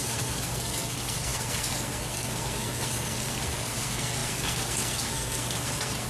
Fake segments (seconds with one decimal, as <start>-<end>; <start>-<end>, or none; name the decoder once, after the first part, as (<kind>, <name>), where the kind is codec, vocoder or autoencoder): 0.0-6.1 (codec, SNAC)